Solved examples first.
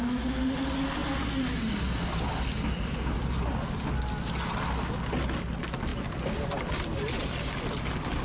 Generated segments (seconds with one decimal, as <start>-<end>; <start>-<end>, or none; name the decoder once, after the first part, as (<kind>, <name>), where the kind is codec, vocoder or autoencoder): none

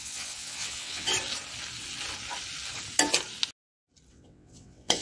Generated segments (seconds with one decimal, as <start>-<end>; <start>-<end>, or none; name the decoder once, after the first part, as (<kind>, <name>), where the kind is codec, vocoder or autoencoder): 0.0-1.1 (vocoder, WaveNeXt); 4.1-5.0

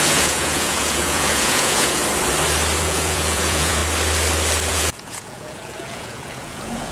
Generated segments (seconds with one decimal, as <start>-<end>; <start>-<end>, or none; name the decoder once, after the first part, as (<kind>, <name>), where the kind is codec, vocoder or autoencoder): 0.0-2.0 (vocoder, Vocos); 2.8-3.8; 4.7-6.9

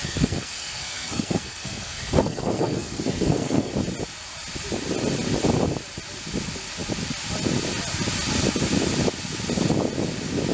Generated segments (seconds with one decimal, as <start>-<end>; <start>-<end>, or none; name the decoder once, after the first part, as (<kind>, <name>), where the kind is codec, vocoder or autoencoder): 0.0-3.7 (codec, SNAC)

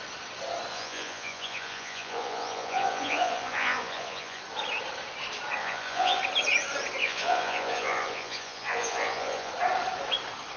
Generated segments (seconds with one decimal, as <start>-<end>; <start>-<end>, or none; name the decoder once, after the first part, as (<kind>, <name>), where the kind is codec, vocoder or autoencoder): 0.7-4.4 (vocoder, Vocos); 5.6-6.2; 7.0-9.5